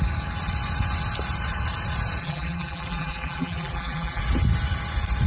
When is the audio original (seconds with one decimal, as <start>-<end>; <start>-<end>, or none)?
0.0-2.2; 4.2-5.3